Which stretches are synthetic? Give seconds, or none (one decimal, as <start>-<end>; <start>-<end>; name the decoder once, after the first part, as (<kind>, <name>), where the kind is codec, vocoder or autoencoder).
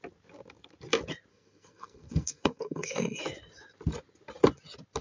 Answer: 1.3-3.2 (codec, SNAC)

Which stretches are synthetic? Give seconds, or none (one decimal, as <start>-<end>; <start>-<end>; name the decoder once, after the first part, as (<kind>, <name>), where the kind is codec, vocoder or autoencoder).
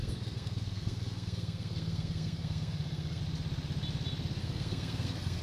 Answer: 0.0-3.2 (codec, SNAC); 4.4-5.4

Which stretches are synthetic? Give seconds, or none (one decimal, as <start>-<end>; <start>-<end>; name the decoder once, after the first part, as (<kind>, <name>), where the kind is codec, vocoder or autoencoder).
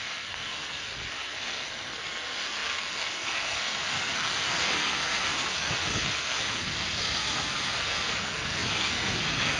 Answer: 0.0-9.6 (codec, SNAC)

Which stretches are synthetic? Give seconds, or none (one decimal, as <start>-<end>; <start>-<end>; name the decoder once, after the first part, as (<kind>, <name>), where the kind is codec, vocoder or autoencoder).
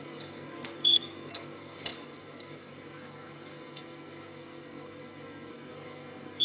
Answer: 0.0-6.4 (codec, SNAC)